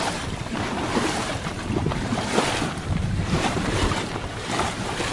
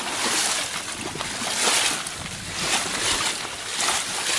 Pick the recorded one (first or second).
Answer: second